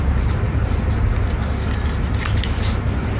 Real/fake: real